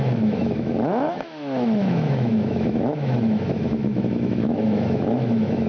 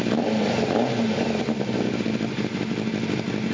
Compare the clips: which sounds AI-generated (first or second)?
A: first